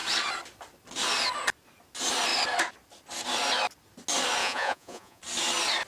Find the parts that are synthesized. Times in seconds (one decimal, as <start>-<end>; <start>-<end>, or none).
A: 4.4-5.2